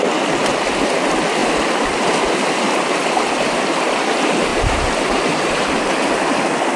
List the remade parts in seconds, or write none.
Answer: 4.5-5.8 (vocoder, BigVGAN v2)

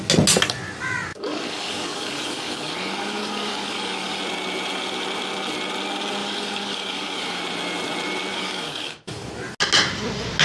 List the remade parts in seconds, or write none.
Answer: 1.1-4.2 (codec, DAC); 6.2-7.4; 8.3-9.3

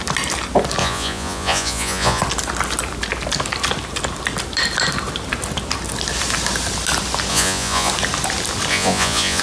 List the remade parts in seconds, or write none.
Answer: 0.8-2.2 (vocoder, Vocos); 7.3-7.9; 8.7-9.4

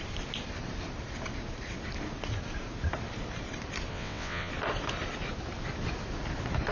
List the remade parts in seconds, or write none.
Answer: 3.9-4.5 (vocoder, WaveNeXt)

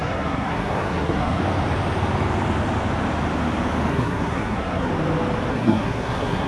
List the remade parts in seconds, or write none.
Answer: 0.0-1.4 (codec, SNAC); 3.9-4.9; 5.5-6.5

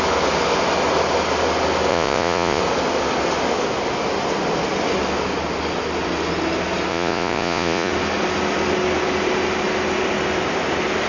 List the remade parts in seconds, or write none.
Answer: 1.9-2.6 (vocoder, Vocos); 6.9-7.9

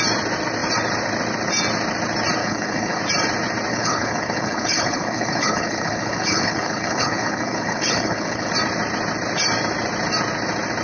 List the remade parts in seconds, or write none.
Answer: 2.4-3.0 (codec, HILCodec); 3.7-8.5

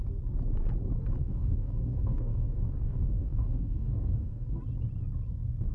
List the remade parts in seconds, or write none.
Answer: 1.2-4.6 (codec, DAC)